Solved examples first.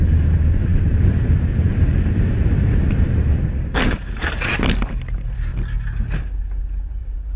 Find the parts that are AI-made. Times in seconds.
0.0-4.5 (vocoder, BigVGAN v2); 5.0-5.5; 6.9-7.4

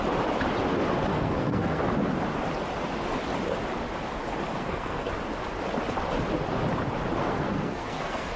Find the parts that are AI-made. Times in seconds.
1.1-1.8 (codec, SNAC); 4.5-5.1; 7.2-8.4

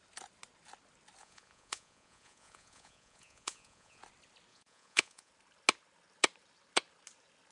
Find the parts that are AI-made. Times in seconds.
1.2-4.0 (vocoder, Vocos); 4.5-5.3

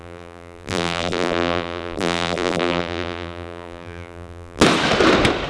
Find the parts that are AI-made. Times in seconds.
0.0-4.6 (vocoder, BigVGAN v2)

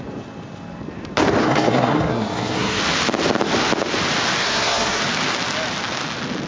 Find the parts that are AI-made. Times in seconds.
1.4-2.8 (codec, SNAC); 4.4-5.0

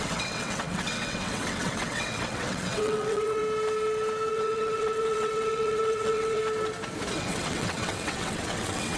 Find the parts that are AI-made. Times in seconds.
0.0-3.4 (vocoder, WaveNeXt); 4.3-6.4; 7.2-9.0

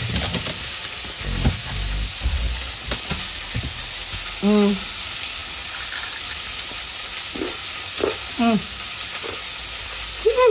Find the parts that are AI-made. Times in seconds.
none

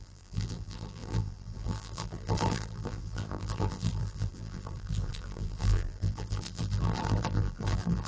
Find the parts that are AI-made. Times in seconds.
0.0-8.1 (vocoder, BigVGAN v2)